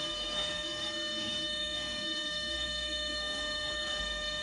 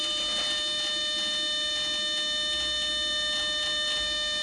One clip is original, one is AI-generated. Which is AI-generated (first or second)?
first